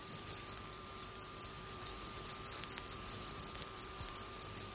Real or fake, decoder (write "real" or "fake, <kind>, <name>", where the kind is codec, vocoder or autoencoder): real